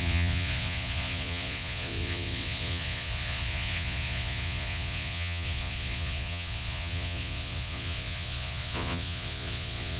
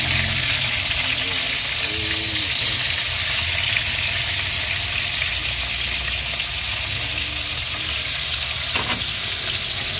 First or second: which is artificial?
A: first